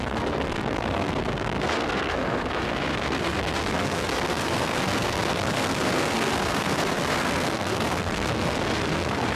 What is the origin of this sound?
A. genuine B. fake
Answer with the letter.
B